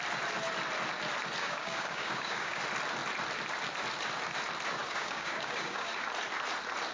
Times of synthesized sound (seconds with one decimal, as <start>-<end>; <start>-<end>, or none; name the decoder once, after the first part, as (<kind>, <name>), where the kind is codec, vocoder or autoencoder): 1.4-2.6 (codec, DAC); 4.8-5.9